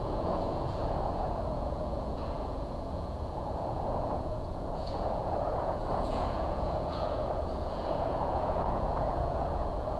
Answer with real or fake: fake